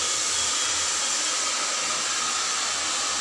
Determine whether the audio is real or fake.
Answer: real